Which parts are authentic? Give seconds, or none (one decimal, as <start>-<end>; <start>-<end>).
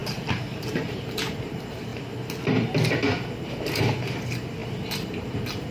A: 1.9-3.4